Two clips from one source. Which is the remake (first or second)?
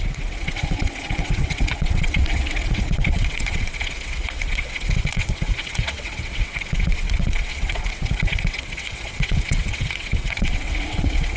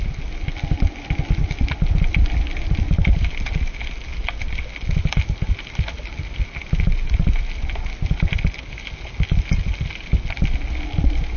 first